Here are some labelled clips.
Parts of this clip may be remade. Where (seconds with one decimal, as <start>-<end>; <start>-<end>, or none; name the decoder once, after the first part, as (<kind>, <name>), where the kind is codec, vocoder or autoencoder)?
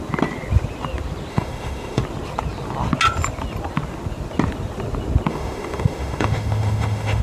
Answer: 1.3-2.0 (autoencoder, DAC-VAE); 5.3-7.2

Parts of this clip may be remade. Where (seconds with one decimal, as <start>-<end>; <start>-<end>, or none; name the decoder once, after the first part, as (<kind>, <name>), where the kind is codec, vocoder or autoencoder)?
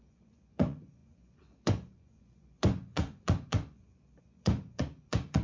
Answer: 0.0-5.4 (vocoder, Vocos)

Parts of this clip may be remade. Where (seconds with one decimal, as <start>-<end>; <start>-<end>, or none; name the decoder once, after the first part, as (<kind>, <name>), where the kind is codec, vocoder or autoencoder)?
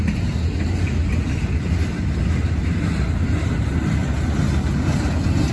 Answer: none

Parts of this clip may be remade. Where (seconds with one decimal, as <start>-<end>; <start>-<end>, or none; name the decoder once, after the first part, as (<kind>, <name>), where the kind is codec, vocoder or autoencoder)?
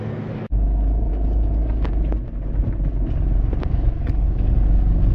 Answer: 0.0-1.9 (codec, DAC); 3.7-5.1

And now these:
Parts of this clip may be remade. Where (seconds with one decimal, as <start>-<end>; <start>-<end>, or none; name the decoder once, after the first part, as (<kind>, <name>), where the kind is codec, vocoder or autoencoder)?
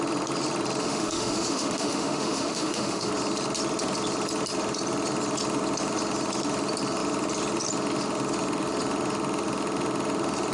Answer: 0.8-3.1 (autoencoder, DAC-VAE)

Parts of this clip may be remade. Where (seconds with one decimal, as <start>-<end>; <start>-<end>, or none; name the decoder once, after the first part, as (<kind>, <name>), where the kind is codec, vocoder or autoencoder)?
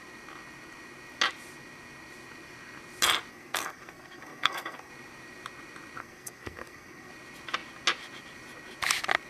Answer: 3.3-4.9 (codec, SNAC); 6.0-7.1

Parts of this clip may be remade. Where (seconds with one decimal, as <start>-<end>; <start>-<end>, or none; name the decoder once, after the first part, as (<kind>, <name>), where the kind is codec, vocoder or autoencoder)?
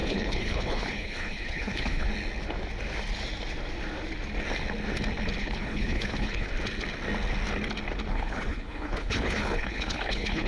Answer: 0.0-2.1 (codec, HILCodec); 5.4-6.5; 8.1-10.5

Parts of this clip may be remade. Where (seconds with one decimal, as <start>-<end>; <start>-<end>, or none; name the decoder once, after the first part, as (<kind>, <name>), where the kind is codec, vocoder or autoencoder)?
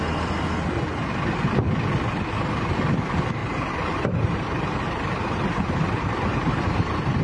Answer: 3.4-7.2 (vocoder, BigVGAN v2)